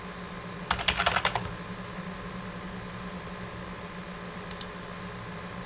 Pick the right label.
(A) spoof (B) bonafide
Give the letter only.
B